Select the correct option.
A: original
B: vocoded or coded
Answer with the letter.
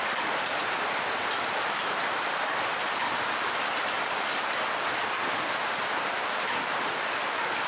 B